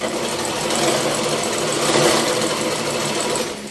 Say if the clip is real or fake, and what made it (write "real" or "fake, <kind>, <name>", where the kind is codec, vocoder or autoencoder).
real